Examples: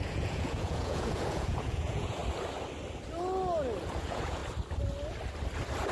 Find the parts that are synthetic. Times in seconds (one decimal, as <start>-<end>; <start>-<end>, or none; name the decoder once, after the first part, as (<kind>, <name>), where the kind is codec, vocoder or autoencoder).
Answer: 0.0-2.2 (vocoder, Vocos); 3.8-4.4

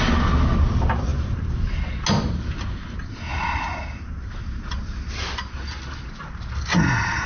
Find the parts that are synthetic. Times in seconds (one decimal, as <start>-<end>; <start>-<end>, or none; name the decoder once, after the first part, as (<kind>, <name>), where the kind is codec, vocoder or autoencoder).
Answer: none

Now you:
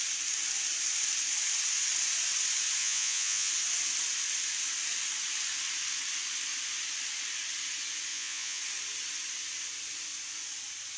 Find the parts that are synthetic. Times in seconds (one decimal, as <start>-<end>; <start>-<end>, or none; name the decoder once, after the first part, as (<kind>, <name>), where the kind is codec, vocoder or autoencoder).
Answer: 2.8-3.5 (vocoder, Vocos); 8.1-8.6